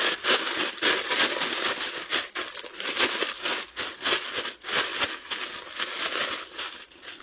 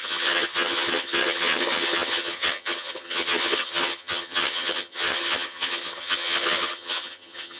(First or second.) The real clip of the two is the first